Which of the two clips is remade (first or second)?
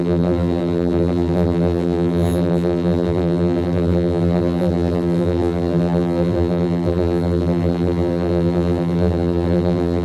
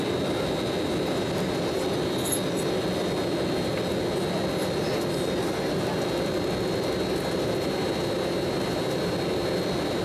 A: first